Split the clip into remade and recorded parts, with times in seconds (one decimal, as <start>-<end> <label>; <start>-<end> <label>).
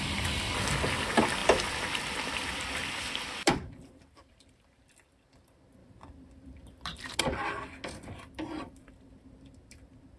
0.0-1.4 recorded; 1.4-4.9 remade; 4.9-5.8 recorded; 5.8-7.2 remade; 7.2-10.2 recorded